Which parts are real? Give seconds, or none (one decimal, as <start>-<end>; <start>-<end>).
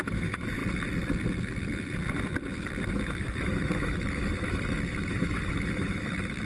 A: 0.6-2.9